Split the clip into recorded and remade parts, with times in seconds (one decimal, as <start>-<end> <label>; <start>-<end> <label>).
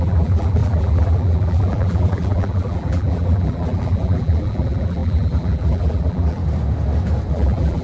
0.0-6.4 remade; 6.4-7.3 recorded; 7.3-7.8 remade